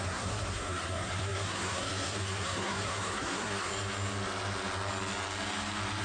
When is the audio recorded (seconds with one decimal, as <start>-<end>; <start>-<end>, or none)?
3.7-6.0